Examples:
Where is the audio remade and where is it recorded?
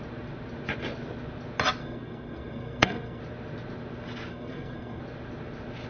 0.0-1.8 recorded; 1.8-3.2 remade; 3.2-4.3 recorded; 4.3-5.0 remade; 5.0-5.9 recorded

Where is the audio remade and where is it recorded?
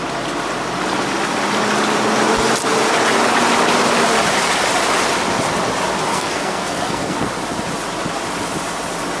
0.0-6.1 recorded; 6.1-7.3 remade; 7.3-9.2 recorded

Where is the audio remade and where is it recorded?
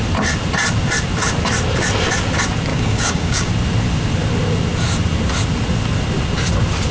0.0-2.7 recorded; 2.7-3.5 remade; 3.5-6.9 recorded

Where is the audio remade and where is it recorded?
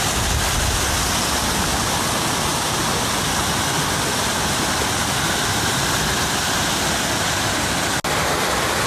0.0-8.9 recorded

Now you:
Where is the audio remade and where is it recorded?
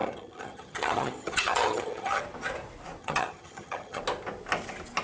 0.0-2.2 remade; 2.2-3.0 recorded; 3.0-4.0 remade; 4.0-5.0 recorded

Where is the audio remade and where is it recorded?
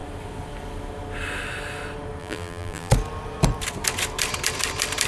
0.0-2.2 recorded; 2.2-2.9 remade; 2.9-5.1 recorded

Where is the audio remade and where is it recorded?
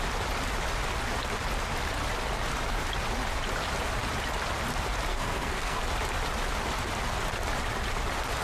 0.0-5.1 recorded; 5.1-5.8 remade; 5.8-8.4 recorded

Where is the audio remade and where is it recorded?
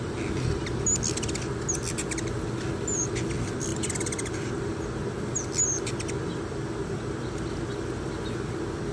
0.0-3.7 recorded; 3.7-4.3 remade; 4.3-8.9 recorded